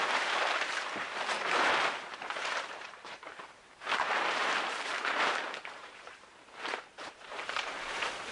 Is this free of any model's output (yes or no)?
no